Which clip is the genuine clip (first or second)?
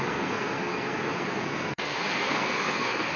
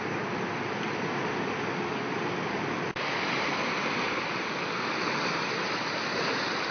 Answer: second